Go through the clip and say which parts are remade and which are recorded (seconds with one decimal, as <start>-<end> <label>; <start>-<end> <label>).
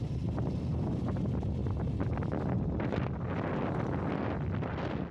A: 0.0-5.1 recorded